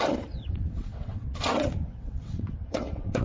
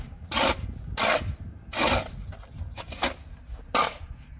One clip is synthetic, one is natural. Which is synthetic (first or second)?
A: first